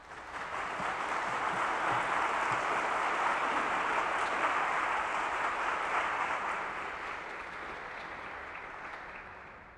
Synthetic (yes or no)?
no